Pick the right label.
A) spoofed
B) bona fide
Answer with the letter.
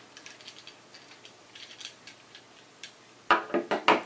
B